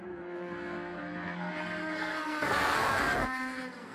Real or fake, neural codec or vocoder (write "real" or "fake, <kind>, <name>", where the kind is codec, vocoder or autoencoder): fake, codec, SNAC